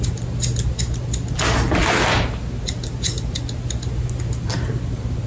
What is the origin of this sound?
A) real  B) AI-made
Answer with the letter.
A